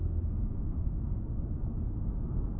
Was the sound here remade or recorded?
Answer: remade